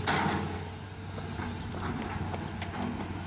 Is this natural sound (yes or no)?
yes